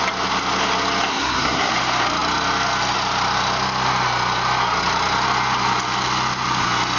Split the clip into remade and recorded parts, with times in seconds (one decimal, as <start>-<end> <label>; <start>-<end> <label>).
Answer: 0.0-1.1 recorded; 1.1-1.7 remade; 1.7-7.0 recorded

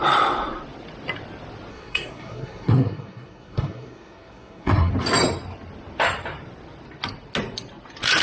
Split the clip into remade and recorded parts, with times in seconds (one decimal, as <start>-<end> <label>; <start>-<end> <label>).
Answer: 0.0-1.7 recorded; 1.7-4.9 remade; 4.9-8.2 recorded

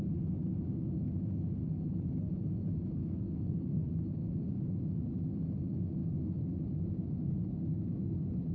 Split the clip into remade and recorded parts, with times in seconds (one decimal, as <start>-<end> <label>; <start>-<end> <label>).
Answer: 0.0-3.0 recorded; 3.0-3.9 remade; 3.9-8.5 recorded

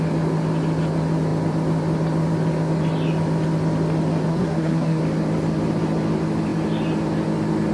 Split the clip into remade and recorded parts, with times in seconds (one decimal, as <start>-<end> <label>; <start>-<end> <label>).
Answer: 0.0-4.3 recorded; 4.3-5.0 remade; 5.0-7.7 recorded